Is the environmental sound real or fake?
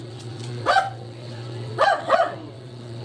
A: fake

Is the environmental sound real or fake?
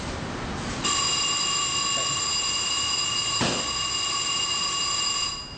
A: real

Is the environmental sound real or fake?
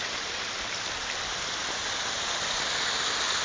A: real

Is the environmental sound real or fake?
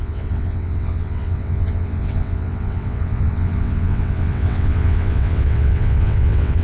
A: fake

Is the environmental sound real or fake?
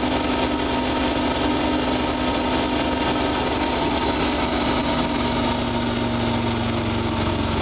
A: real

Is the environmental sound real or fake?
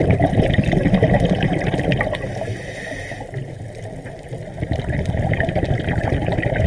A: real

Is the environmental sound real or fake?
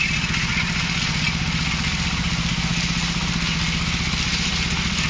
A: real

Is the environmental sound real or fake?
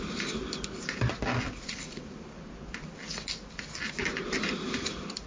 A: real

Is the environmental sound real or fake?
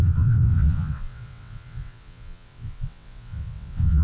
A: fake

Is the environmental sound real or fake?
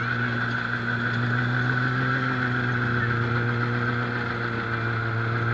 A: real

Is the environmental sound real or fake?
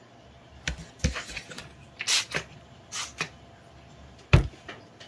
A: real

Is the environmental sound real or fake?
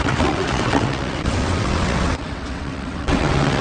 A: fake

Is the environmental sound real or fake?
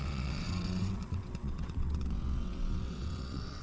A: fake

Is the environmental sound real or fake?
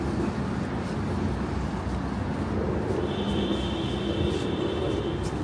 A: real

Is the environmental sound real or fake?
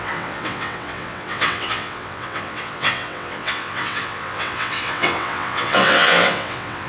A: fake